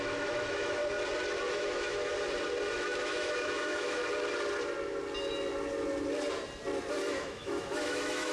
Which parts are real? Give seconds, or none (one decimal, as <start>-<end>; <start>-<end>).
0.8-1.5; 2.1-2.7; 4.0-6.9